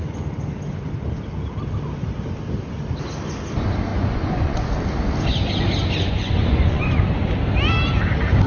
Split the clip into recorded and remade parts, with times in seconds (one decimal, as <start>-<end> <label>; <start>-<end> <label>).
0.0-3.9 recorded; 3.9-4.7 remade; 4.7-6.0 recorded; 6.0-7.0 remade; 7.0-8.5 recorded

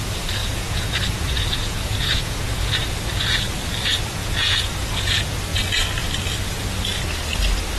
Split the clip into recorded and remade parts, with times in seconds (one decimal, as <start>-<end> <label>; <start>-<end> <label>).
0.0-0.4 recorded; 0.4-3.5 remade; 3.5-4.2 recorded; 4.2-5.0 remade; 5.0-7.8 recorded

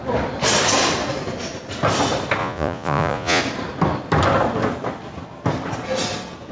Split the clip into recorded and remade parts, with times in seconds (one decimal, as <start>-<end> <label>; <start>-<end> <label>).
0.0-2.4 recorded; 2.4-3.4 remade; 3.4-6.5 recorded

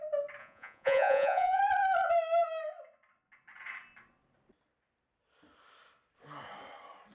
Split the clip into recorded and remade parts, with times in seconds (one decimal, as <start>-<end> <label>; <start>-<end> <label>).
0.0-0.4 recorded; 0.4-1.6 remade; 1.6-7.1 recorded

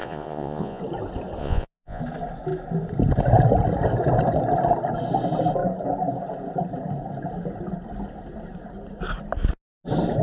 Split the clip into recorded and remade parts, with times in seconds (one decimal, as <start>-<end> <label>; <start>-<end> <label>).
0.0-0.8 remade; 0.8-1.4 recorded; 1.4-2.0 remade; 2.0-10.2 recorded

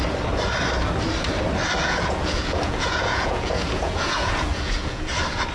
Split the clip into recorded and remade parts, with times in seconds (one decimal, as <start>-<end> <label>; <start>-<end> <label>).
0.0-1.8 recorded; 1.8-5.1 remade; 5.1-5.5 recorded

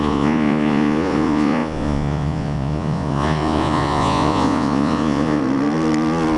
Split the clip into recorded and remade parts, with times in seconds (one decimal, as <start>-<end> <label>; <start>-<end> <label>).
0.0-5.4 remade; 5.4-6.4 recorded

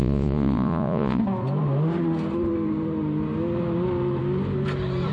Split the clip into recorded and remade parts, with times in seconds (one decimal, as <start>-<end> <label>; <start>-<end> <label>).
0.0-1.2 remade; 1.2-5.1 recorded